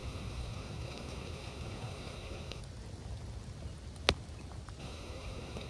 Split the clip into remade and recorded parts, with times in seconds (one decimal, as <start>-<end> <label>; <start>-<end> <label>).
0.0-2.6 remade; 2.6-4.8 recorded; 4.8-5.7 remade